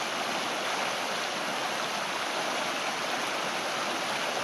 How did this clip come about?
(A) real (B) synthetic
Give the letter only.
A